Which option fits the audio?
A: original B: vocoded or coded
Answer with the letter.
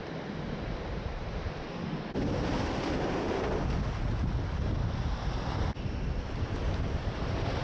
A